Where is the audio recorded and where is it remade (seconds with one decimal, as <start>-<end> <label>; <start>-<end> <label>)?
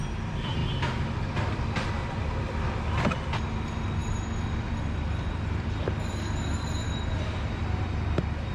0.0-4.0 recorded; 4.0-8.5 remade